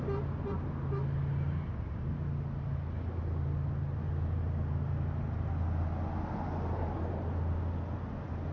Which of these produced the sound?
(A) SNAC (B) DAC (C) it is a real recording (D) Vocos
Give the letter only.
C